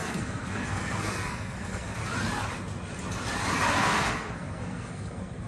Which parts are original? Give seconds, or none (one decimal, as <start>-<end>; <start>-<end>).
2.0-3.7